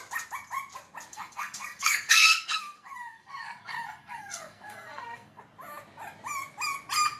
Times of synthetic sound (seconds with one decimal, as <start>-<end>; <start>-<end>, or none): 1.1-5.4